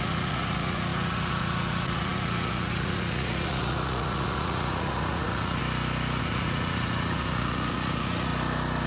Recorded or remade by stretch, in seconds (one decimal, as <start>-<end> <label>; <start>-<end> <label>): 0.0-5.6 remade; 5.6-6.2 recorded; 6.2-8.3 remade; 8.3-8.9 recorded